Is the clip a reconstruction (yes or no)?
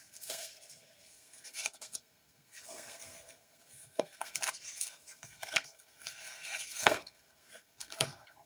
yes